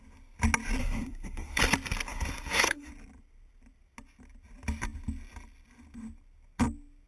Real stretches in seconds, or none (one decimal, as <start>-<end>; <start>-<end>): 0.0-0.8; 1.6-2.1; 2.9-7.1